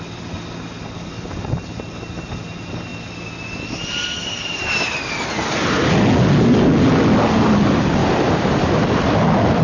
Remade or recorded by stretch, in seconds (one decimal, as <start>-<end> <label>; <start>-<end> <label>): 0.0-8.0 recorded; 8.0-8.7 remade; 8.7-9.6 recorded